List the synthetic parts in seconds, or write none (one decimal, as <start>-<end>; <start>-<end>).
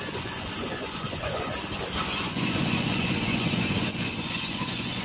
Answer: 0.0-1.5; 2.0-5.0